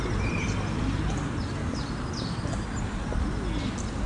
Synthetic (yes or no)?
no